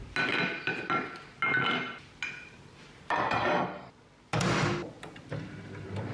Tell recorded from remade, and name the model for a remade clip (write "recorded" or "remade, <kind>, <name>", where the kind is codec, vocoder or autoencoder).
recorded